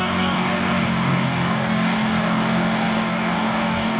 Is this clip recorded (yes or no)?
no